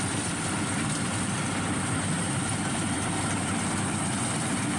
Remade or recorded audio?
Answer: recorded